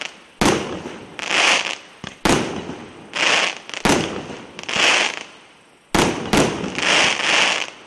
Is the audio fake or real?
real